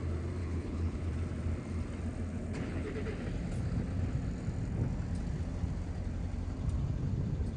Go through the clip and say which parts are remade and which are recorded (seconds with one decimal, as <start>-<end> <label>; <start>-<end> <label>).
0.0-0.4 recorded; 0.4-1.1 remade; 1.1-2.3 recorded; 2.3-2.9 remade; 2.9-7.6 recorded